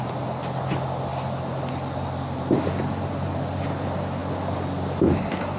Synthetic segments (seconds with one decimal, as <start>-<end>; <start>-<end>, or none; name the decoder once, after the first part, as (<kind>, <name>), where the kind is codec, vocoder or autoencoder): none